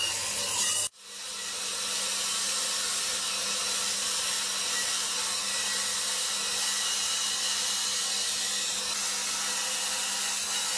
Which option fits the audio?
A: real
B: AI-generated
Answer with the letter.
A